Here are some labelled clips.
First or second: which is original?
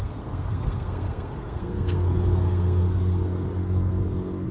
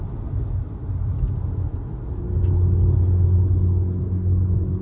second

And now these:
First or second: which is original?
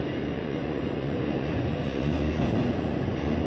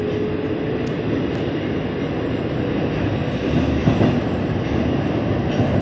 second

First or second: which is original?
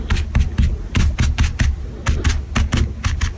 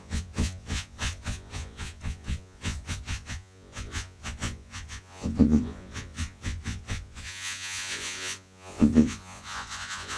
first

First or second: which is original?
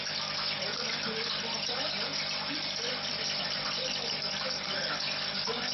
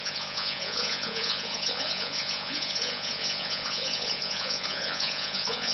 first